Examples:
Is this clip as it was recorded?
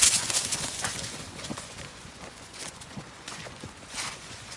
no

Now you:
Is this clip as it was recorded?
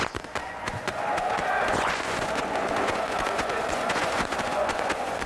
no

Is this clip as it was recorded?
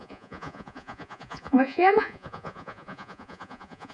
no